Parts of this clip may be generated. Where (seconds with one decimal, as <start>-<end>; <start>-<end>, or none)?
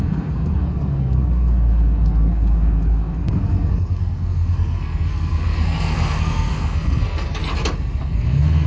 0.0-7.4; 8.0-8.7